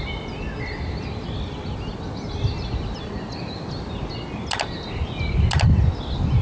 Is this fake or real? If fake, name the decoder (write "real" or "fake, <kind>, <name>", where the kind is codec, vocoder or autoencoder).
real